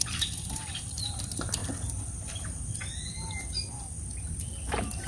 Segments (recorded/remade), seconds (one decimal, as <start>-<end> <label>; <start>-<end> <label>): 0.0-1.6 remade; 1.6-5.1 recorded